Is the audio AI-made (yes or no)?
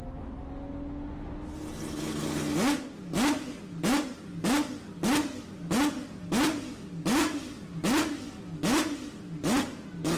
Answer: no